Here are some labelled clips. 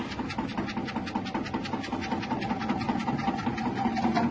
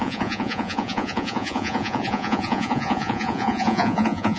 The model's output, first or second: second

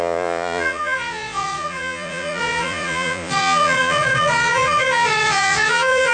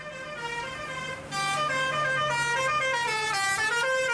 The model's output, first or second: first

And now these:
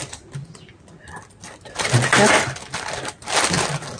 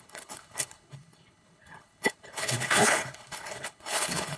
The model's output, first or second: second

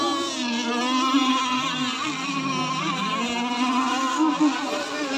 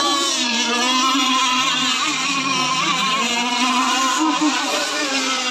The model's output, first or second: second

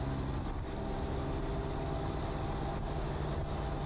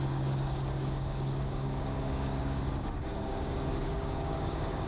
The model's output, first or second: second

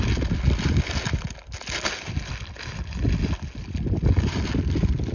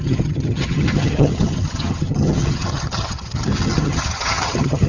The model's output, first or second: second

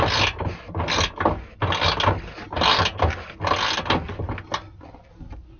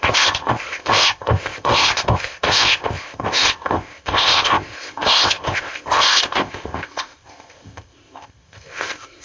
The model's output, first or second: second